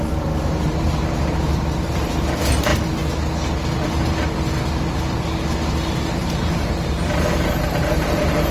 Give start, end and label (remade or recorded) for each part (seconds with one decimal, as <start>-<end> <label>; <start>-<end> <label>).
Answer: 0.0-2.7 remade; 2.7-6.2 recorded; 6.2-8.5 remade